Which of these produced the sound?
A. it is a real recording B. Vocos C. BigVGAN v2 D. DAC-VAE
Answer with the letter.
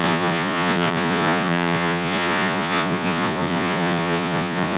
B